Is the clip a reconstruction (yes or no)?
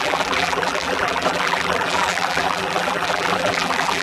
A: yes